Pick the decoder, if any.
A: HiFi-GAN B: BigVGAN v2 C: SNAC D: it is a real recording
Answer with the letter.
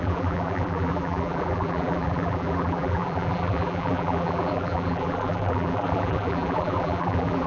B